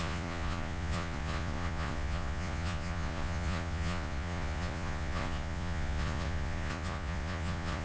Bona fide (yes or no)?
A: no